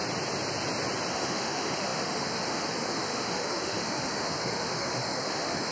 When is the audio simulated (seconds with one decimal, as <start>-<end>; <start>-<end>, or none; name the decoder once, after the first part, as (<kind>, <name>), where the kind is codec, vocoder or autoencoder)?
1.1-5.7 (autoencoder, DAC-VAE)